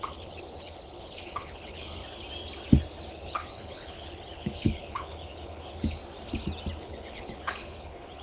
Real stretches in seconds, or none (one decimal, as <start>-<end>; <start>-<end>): 2.0-3.1; 6.0-6.8